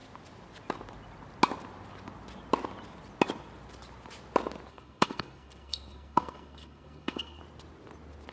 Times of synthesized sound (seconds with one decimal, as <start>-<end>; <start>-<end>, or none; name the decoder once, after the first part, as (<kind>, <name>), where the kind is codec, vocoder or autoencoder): 4.7-7.4 (codec, SNAC)